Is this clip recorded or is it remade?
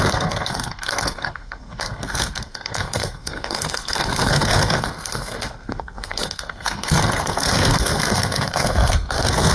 remade